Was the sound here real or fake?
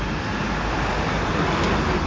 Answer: real